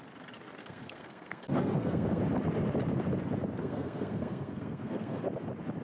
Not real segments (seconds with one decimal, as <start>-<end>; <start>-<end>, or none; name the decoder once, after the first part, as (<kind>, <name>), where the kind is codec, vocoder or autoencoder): 0.6-2.2 (codec, SNAC); 3.6-5.2